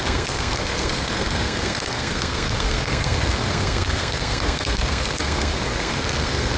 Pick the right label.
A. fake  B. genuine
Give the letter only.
A